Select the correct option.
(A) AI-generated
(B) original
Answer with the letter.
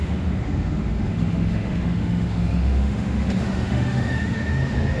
A